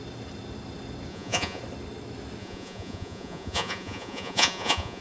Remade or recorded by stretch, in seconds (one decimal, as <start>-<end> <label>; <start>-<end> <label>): 0.0-1.1 recorded; 1.1-1.6 remade; 1.6-2.4 recorded; 2.4-5.0 remade